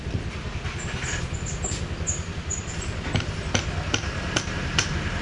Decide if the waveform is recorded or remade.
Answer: recorded